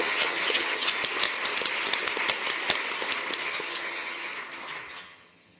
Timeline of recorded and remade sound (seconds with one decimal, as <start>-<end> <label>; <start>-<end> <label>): 0.0-0.9 remade; 0.9-3.5 recorded; 3.5-4.3 remade; 4.3-4.9 recorded; 4.9-5.6 remade